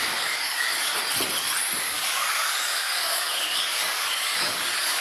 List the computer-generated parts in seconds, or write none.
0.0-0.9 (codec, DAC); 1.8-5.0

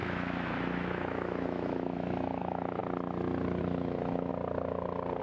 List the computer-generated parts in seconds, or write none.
0.0-2.8 (autoencoder, DAC-VAE); 3.6-4.3

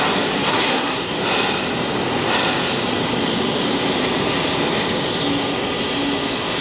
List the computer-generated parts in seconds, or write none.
0.5-1.1 (codec, SNAC)

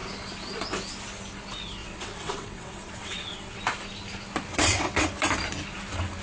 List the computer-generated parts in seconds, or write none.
1.8-3.6 (vocoder, WaveNeXt); 4.5-5.1

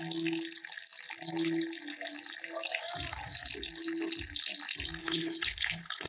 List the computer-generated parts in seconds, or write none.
5.0-6.1 (codec, HILCodec)

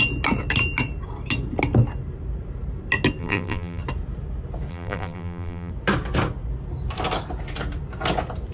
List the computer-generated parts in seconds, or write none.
3.2-3.8 (vocoder, BigVGAN v2); 4.7-5.7

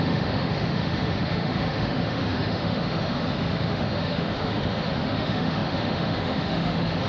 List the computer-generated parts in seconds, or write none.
0.0-7.1 (autoencoder, DAC-VAE)